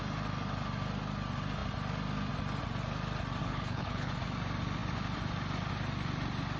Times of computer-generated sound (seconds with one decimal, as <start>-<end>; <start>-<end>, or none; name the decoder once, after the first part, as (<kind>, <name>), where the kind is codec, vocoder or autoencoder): 3.4-4.1 (codec, HILCodec)